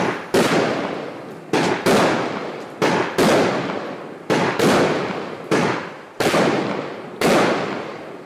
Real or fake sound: real